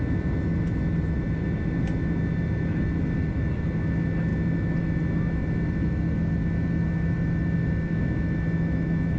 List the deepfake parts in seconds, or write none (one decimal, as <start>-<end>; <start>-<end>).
none